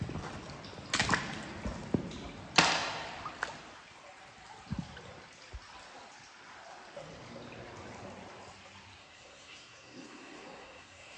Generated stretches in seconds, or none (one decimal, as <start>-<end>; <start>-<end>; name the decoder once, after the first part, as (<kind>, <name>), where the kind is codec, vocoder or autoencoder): 9.0-11.2 (codec, SNAC)